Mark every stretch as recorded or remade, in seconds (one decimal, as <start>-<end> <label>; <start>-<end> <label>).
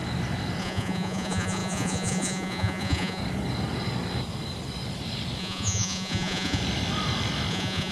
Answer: 0.0-0.6 recorded; 0.6-3.2 remade; 3.2-5.4 recorded; 5.4-6.6 remade; 6.6-7.5 recorded; 7.5-7.9 remade